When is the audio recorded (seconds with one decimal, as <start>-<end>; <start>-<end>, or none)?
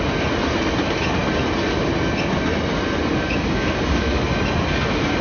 0.0-5.2